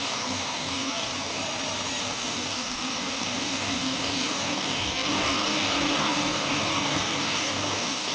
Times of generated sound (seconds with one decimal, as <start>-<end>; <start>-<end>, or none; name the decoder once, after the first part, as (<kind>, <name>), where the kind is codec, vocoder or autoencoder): 0.0-1.4 (codec, DAC); 2.0-8.1